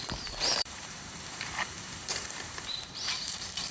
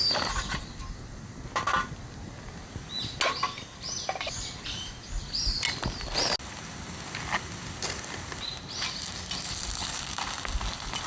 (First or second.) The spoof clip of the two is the first